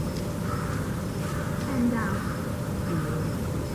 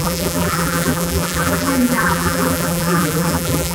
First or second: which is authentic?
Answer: first